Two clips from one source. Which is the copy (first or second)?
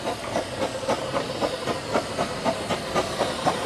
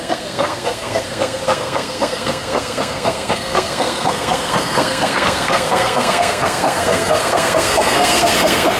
second